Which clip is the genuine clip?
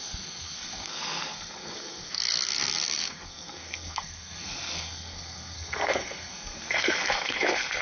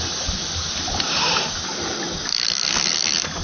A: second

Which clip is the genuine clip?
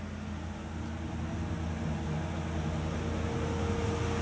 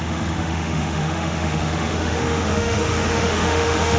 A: first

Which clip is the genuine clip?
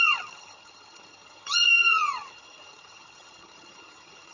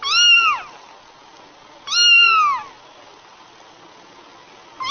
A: second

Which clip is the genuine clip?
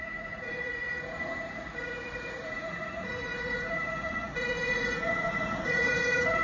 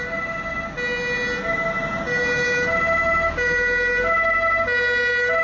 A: second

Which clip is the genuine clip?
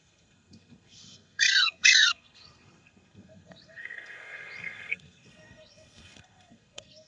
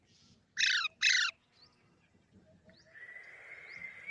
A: second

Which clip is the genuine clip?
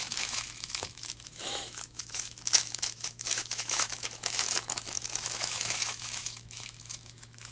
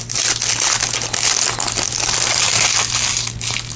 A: second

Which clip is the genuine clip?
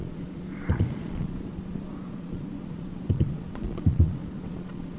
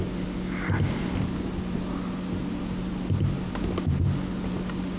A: second